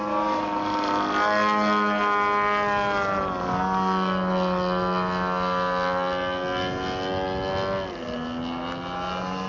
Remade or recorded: recorded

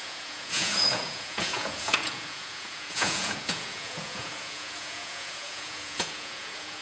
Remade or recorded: remade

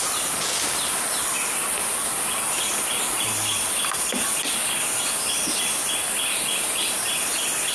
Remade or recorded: recorded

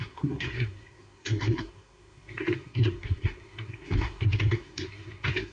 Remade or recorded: remade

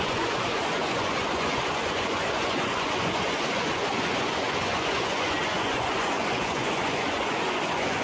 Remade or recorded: remade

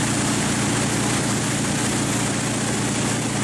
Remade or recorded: recorded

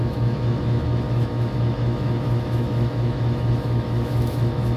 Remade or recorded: remade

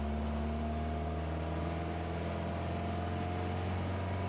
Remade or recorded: recorded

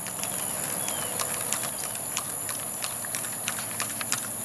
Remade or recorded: recorded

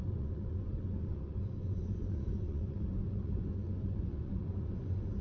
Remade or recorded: remade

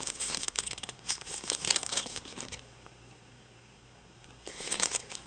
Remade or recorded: remade